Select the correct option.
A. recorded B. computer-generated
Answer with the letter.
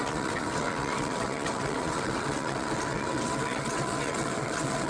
B